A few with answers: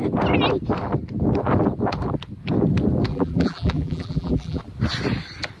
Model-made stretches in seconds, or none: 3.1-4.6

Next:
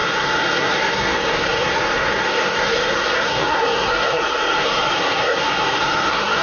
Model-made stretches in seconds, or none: 0.0-6.4